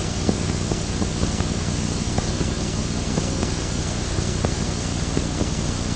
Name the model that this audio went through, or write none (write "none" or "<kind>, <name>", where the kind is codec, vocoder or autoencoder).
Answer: codec, SNAC